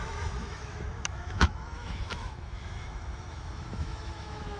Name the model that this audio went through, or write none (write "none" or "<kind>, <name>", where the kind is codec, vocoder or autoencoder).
autoencoder, DAC-VAE